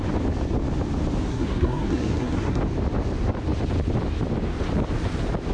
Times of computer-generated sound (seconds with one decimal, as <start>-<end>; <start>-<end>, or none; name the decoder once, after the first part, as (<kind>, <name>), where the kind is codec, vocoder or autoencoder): 1.3-2.6 (codec, SNAC)